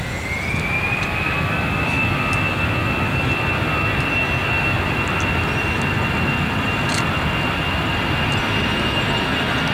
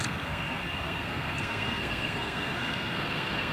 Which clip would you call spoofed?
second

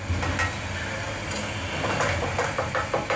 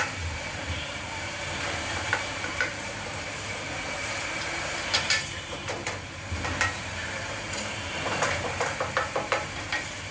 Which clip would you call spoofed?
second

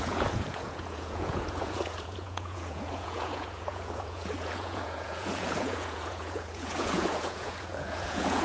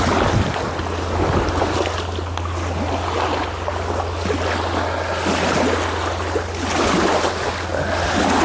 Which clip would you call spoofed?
first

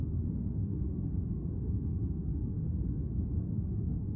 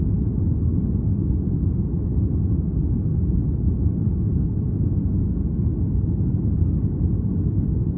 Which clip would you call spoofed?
first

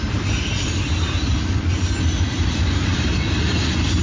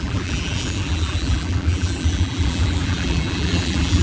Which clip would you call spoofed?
second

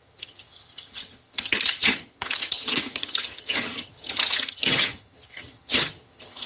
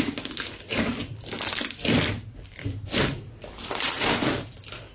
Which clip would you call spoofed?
first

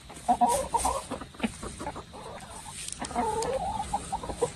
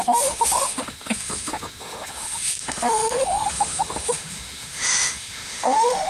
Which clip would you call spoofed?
second